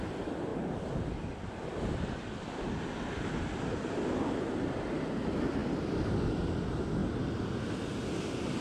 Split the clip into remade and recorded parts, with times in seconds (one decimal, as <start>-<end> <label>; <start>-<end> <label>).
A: 0.0-8.6 recorded